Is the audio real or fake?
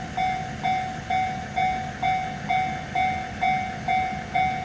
real